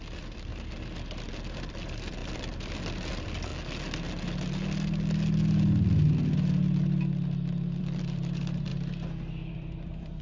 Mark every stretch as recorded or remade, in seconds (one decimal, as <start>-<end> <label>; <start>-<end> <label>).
0.0-0.5 remade; 0.5-1.3 recorded; 1.3-3.5 remade; 3.5-7.8 recorded; 7.8-8.7 remade; 8.7-9.5 recorded; 9.5-10.2 remade